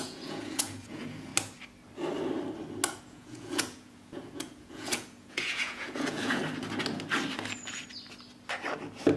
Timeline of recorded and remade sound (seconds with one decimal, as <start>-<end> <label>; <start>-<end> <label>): 0.0-1.3 remade; 1.3-3.0 recorded; 3.0-6.4 remade; 6.4-9.2 recorded